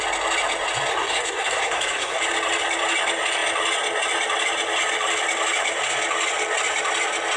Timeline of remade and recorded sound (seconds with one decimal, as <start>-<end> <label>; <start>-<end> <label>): 0.0-0.9 recorded; 0.9-2.2 remade; 2.2-7.4 recorded